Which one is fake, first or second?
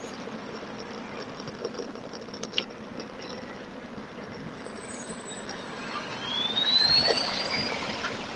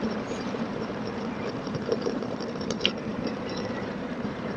second